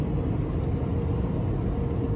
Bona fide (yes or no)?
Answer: yes